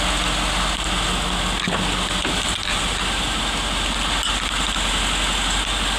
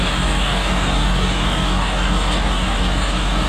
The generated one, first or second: second